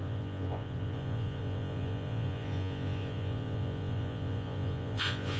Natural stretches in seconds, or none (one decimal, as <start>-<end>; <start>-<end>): none